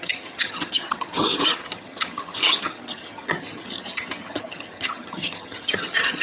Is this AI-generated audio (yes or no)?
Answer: yes